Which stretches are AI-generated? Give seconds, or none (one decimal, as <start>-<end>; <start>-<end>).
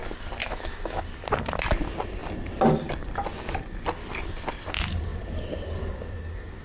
0.4-1.0